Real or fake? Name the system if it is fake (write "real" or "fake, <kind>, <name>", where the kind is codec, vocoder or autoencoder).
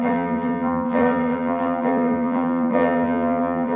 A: fake, vocoder, BigVGAN v2